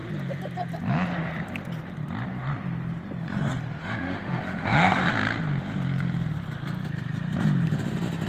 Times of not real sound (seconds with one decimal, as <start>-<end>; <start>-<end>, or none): 3.8-5.0